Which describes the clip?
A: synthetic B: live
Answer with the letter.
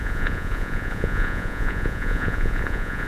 A